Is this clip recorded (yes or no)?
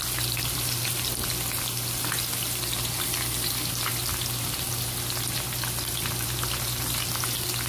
yes